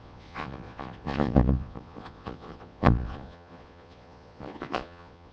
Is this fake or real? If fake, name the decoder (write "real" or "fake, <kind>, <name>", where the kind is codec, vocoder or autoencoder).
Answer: fake, vocoder, Vocos